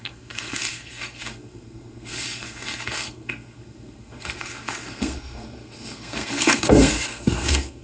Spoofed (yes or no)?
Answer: yes